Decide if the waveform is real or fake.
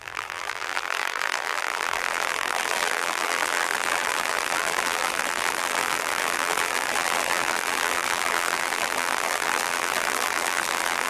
fake